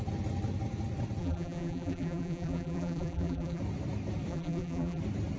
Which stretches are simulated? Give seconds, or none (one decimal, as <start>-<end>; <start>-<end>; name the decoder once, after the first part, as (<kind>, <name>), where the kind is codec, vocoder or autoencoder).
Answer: 1.2-3.6 (vocoder, BigVGAN v2); 4.3-5.0